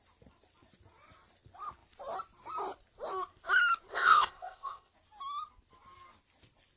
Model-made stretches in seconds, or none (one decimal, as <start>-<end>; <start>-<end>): 3.9-4.9